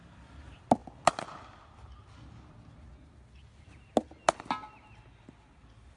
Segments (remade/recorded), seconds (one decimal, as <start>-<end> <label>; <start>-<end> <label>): 0.0-6.0 recorded